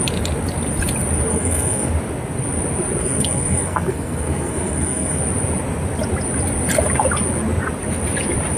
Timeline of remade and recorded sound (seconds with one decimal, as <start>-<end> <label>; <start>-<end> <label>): 0.0-1.3 recorded; 1.3-1.9 remade; 1.9-3.0 recorded; 3.0-5.2 remade; 5.2-8.6 recorded